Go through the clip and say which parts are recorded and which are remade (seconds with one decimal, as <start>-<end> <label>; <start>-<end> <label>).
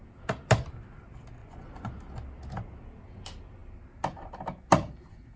0.0-1.4 recorded; 1.4-1.9 remade; 1.9-5.4 recorded